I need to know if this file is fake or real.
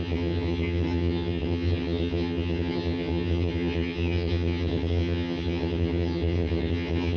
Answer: fake